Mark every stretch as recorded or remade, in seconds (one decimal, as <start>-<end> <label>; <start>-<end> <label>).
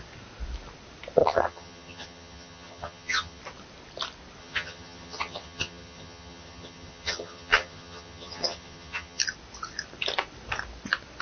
0.0-1.2 recorded; 1.2-3.4 remade; 3.4-4.4 recorded; 4.4-9.2 remade; 9.2-11.2 recorded